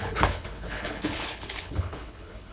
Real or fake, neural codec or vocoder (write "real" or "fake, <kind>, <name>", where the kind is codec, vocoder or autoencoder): fake, codec, HILCodec